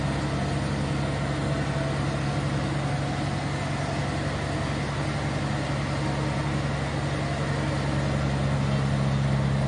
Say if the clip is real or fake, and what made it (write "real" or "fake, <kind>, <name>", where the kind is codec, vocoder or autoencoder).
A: real